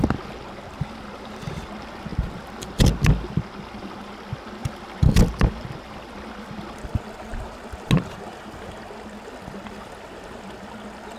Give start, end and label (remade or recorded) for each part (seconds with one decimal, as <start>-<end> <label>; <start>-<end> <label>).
0.0-11.2 recorded